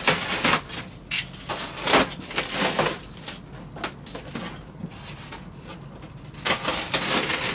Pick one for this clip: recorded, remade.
recorded